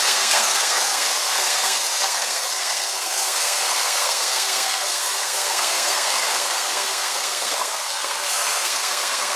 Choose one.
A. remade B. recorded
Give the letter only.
A